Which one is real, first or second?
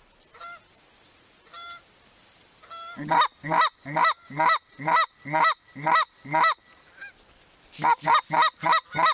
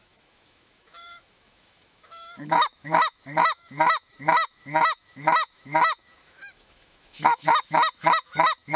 first